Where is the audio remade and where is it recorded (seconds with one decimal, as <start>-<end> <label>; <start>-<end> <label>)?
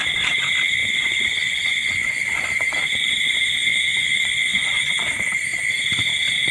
0.0-0.8 recorded; 0.8-3.1 remade; 3.1-3.9 recorded; 3.9-5.1 remade; 5.1-6.5 recorded